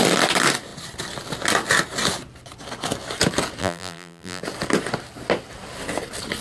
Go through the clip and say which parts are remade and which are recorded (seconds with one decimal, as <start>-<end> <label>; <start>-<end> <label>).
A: 0.0-3.6 recorded; 3.6-4.4 remade; 4.4-6.4 recorded